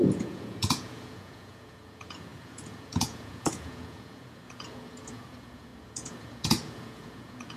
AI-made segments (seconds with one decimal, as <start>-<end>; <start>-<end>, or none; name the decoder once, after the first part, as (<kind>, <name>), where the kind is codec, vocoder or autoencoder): 0.0-7.6 (vocoder, Vocos)